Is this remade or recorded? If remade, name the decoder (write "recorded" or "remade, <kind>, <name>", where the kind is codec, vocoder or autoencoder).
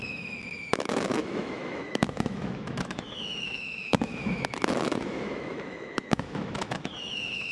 remade, autoencoder, DAC-VAE